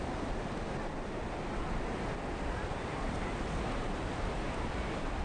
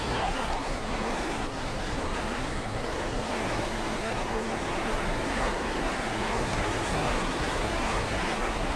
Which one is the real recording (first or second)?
first